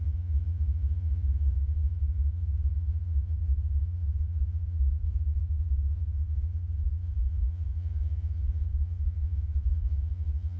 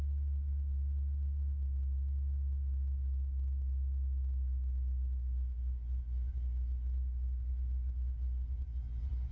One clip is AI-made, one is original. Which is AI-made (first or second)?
first